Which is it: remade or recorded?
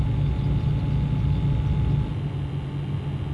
recorded